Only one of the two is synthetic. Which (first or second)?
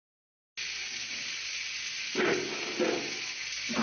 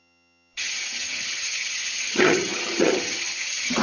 second